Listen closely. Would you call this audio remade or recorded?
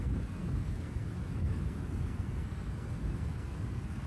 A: remade